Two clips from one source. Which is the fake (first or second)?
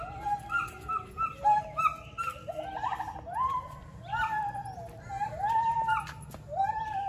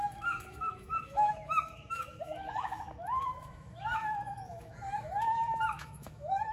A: second